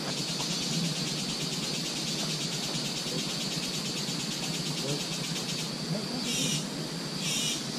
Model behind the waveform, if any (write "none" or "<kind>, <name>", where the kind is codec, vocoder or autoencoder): none